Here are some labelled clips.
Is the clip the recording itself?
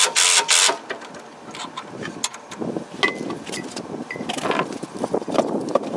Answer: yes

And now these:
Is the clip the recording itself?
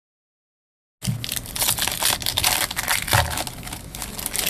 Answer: yes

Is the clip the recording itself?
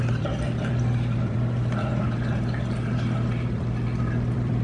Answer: no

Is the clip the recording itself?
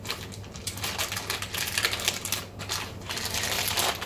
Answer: yes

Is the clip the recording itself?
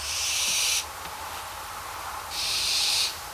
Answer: no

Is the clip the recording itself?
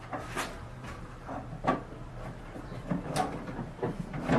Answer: no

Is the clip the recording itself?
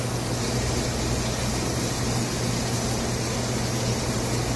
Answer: yes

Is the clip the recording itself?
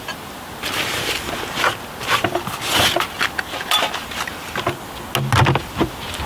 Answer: yes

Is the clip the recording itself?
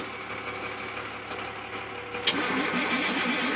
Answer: yes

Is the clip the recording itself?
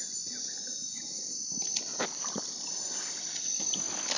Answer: no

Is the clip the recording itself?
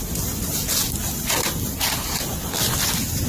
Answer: yes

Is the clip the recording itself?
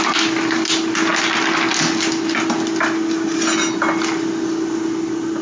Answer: yes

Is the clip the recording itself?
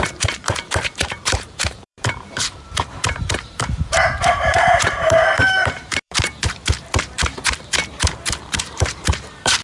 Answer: no